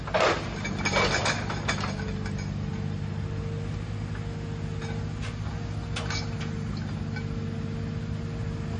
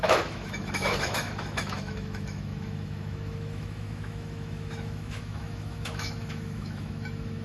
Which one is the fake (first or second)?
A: second